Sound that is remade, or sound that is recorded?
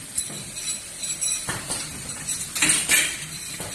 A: remade